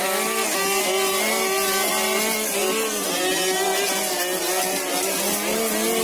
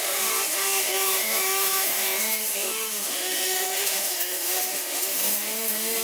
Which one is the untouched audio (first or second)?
first